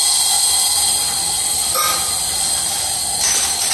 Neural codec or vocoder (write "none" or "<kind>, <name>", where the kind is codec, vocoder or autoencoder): none